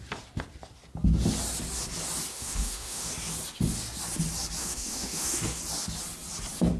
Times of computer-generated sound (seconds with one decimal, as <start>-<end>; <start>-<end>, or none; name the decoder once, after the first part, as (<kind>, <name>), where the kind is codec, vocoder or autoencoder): 2.3-3.1 (autoencoder, DAC-VAE); 4.6-5.6